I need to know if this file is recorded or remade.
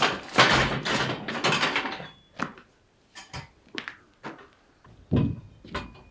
recorded